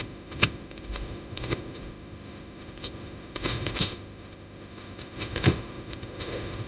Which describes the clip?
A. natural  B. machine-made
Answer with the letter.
B